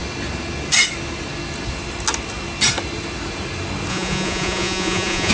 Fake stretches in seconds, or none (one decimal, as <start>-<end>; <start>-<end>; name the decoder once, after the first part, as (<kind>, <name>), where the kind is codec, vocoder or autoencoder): 3.9-5.3 (vocoder, Vocos)